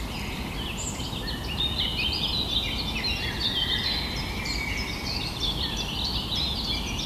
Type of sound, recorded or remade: recorded